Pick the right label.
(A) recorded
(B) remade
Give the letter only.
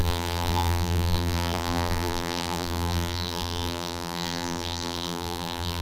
B